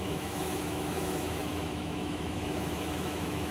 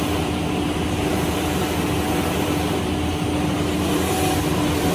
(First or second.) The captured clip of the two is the second